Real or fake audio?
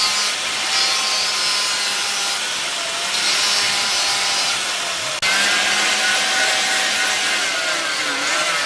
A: real